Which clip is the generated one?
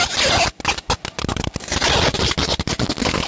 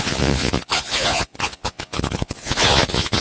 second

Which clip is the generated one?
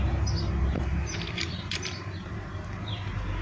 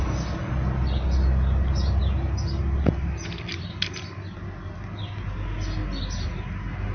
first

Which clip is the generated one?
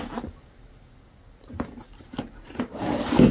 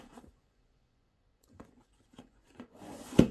second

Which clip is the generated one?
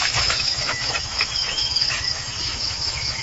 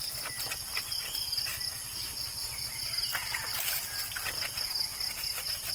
first